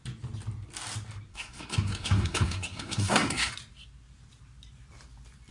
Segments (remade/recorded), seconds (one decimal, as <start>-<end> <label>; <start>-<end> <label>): 0.0-1.3 recorded; 1.3-3.5 remade; 3.5-5.5 recorded